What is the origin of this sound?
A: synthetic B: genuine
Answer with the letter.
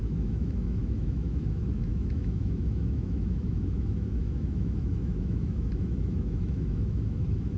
A